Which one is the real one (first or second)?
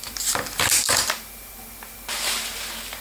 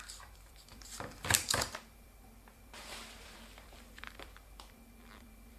first